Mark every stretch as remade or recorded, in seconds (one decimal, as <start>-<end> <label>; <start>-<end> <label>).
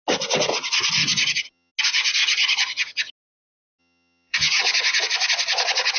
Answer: 0.0-1.0 recorded; 1.0-1.7 remade; 1.7-2.2 recorded; 2.2-3.1 remade; 3.1-3.8 recorded; 3.8-5.0 remade; 5.0-6.0 recorded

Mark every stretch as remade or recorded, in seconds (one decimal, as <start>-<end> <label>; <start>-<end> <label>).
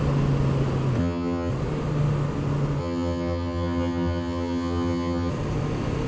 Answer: 0.0-1.0 recorded; 1.0-1.5 remade; 1.5-2.8 recorded; 2.8-5.3 remade; 5.3-6.1 recorded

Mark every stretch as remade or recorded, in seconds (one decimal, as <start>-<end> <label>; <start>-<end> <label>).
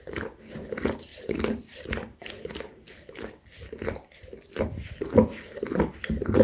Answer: 0.0-6.4 recorded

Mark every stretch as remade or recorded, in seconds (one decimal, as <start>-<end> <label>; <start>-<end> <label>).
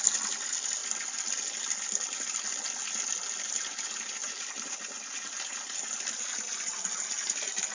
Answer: 0.0-7.7 recorded